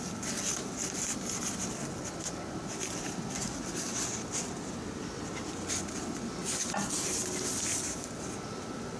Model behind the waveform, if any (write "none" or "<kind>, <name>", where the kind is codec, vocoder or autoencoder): none